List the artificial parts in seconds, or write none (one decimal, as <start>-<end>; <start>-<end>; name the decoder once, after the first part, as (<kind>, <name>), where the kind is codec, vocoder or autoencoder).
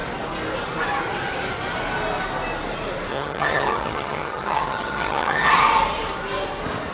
3.1-5.5 (vocoder, HiFi-GAN)